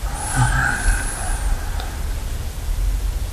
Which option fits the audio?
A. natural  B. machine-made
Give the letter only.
A